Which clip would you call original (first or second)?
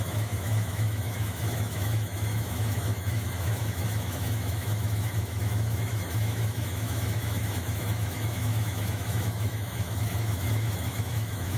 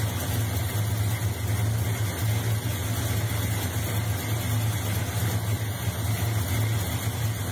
second